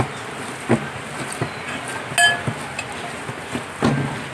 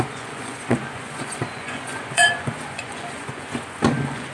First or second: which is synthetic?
second